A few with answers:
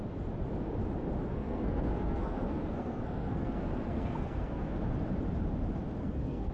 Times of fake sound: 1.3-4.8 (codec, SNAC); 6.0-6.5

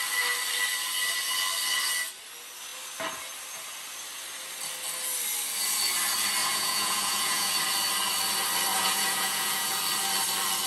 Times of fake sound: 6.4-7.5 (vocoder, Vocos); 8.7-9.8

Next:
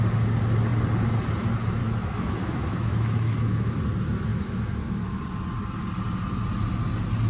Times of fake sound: 1.8-3.8 (autoencoder, DAC-VAE); 4.3-5.2